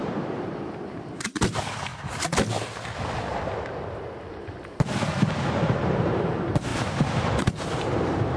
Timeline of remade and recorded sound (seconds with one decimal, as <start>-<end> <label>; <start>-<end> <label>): 0.0-1.9 remade; 1.9-5.4 recorded; 5.4-8.4 remade